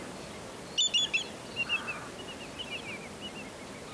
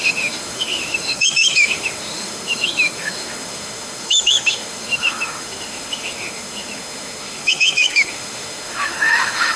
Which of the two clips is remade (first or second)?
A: second